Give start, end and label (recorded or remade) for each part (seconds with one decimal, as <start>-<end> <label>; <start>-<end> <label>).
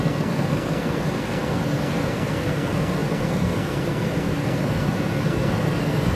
0.0-6.2 remade